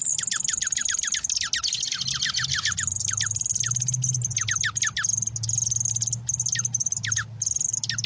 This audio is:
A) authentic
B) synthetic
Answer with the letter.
A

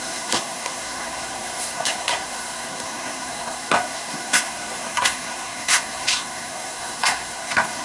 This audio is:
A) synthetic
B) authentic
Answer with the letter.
A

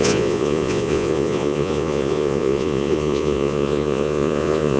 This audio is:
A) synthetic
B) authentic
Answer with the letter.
A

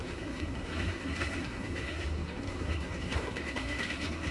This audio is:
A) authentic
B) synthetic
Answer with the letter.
B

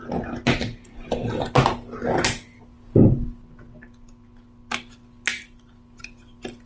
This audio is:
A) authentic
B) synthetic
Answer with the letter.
A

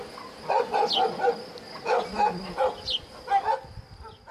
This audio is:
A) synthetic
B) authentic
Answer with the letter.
B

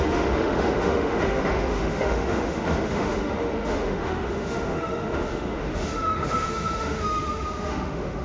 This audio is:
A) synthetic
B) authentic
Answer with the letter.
A